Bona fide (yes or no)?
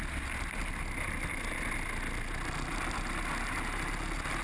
yes